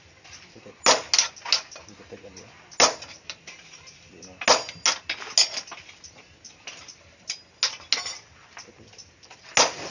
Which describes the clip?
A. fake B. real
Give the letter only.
B